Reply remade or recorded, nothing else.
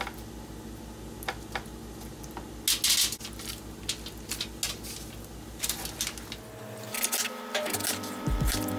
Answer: recorded